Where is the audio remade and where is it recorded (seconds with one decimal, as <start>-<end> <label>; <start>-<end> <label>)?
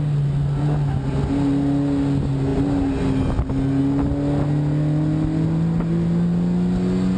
0.0-7.2 recorded